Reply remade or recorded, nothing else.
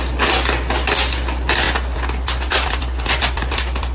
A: recorded